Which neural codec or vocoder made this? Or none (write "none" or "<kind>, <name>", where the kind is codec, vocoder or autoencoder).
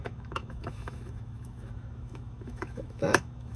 autoencoder, DAC-VAE